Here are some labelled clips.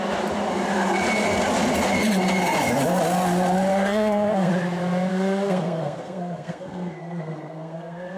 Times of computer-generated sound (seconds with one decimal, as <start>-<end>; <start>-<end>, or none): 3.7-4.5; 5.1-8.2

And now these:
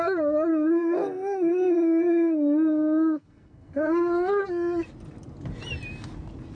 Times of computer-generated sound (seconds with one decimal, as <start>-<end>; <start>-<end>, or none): 0.5-4.4

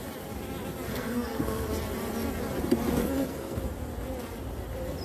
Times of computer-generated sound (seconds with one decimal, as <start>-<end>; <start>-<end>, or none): 0.9-1.7; 3.0-3.6

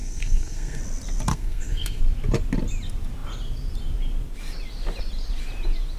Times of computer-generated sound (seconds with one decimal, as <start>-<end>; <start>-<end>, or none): 0.0-0.8; 1.3-2.0

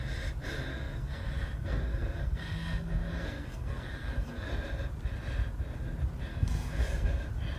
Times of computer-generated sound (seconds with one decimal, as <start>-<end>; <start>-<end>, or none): 0.7-4.5; 6.3-7.1

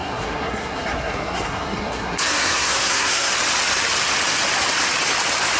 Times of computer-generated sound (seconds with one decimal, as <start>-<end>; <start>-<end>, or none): 0.0-3.3

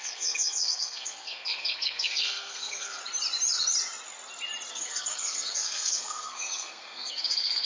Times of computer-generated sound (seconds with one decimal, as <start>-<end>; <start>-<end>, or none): 0.0-3.0; 4.7-7.7